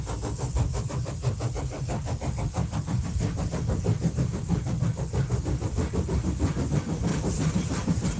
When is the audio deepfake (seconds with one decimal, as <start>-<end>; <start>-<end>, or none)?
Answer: 7.1-8.2